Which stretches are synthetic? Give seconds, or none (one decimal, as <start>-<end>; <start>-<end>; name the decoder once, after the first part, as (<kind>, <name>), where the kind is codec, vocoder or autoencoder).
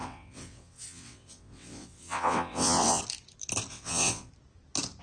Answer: 0.0-3.0 (vocoder, WaveNeXt); 3.7-4.3